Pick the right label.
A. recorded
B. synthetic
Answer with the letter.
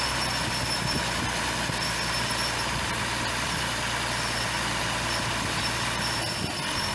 A